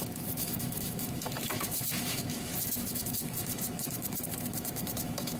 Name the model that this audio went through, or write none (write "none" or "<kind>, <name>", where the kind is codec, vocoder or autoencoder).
autoencoder, DAC-VAE